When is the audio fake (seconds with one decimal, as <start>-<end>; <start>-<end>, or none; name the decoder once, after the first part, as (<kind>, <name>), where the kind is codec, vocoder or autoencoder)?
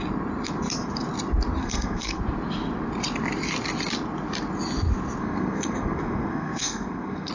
1.6-2.2 (codec, SNAC); 5.2-7.3